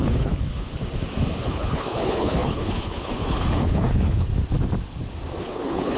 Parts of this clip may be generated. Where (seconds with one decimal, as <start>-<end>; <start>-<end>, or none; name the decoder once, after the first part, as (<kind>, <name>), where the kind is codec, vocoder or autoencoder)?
0.0-0.7 (codec, HILCodec); 1.4-4.3; 5.4-6.0